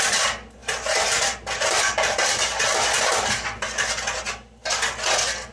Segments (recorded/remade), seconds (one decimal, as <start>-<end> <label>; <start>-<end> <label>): 0.0-5.5 recorded